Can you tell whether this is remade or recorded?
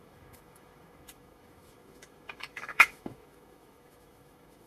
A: remade